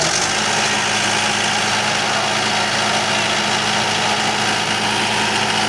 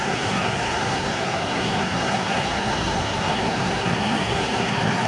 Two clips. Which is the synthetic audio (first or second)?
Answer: second